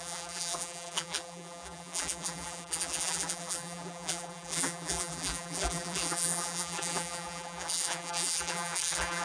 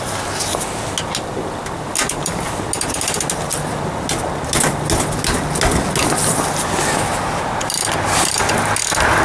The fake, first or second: first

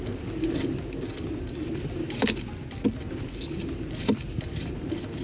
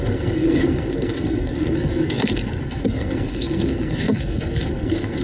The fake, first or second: second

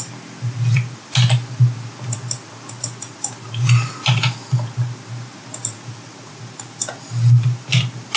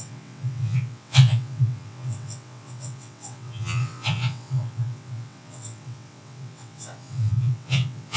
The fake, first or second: second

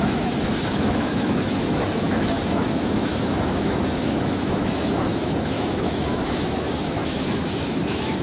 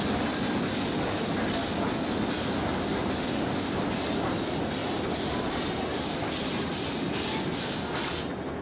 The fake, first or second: first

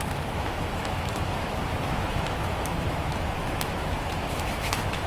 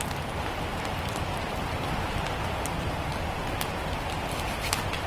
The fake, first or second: first